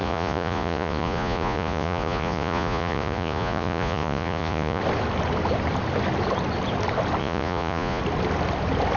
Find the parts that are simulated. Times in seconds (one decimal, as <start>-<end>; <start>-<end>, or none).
0.0-4.8; 7.2-8.0